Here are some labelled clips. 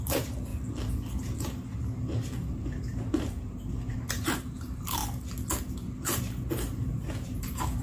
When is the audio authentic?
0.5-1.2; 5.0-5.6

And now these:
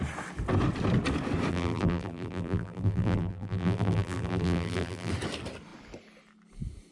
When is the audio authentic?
0.0-1.5; 5.1-6.9

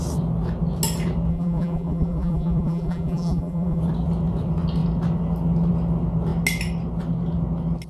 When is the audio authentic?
0.0-1.3; 3.8-7.9

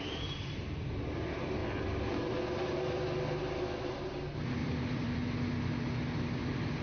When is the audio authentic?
0.0-1.6; 2.4-4.6; 5.5-6.8

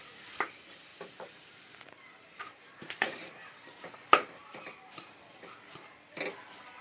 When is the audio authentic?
0.0-0.9; 3.5-4.4; 5.0-6.8

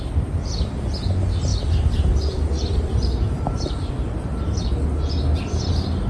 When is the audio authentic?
0.0-1.5; 3.9-6.1

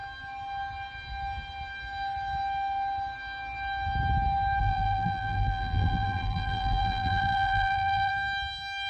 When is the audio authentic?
0.0-4.6; 8.1-8.9